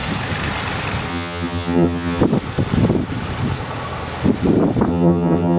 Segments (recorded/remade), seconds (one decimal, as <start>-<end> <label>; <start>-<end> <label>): 0.0-1.1 recorded; 1.1-2.2 remade; 2.2-4.9 recorded; 4.9-5.6 remade